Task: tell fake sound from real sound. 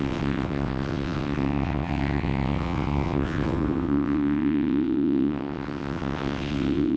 fake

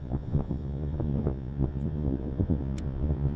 fake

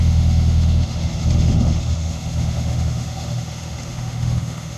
fake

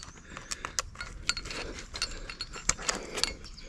real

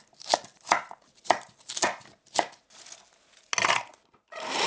real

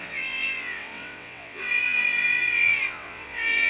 fake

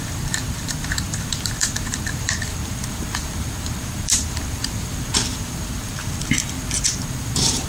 fake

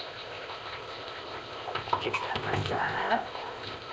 fake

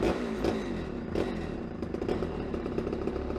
fake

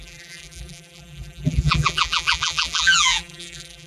fake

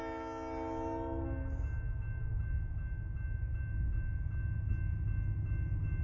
real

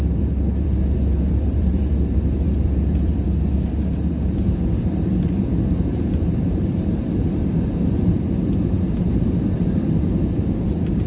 fake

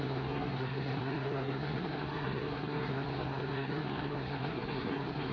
fake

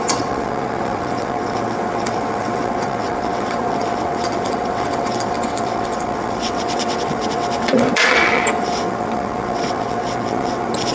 fake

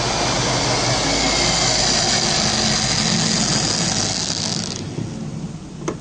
real